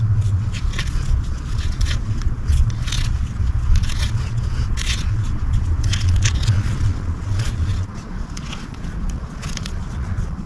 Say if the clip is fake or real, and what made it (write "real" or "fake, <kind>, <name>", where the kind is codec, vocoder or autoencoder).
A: fake, vocoder, Vocos